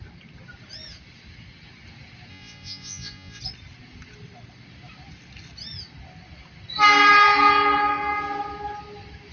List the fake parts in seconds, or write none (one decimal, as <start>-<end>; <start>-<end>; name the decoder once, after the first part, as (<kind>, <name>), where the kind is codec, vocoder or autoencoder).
2.3-3.4 (vocoder, Vocos)